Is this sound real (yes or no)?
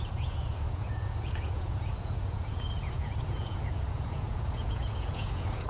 no